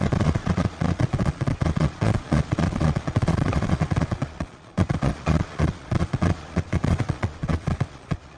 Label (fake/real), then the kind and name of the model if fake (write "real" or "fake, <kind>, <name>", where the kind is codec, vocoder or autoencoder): fake, vocoder, Vocos